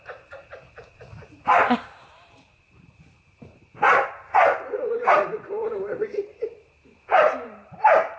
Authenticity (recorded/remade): remade